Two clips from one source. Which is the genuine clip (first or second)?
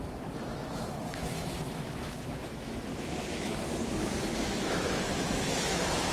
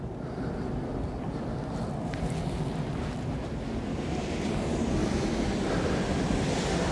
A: second